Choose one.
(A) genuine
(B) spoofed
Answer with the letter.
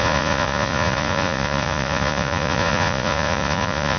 B